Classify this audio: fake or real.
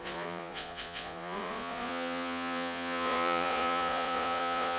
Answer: fake